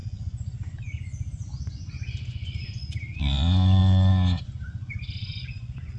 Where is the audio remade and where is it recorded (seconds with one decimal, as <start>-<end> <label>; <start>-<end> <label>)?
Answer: 0.0-6.0 remade